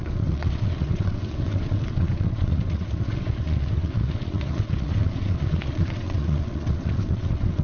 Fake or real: fake